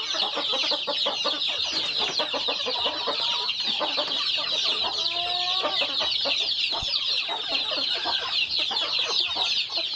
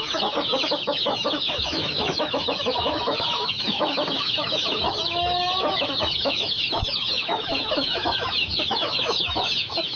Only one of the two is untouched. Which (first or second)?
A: first